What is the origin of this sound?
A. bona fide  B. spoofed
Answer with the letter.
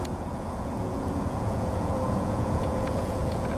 B